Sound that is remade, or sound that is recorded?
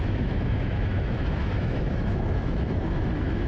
remade